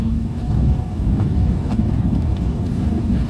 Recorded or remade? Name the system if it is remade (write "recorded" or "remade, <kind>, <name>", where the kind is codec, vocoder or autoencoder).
remade, codec, DAC